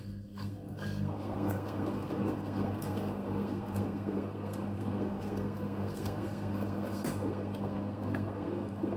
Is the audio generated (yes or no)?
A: yes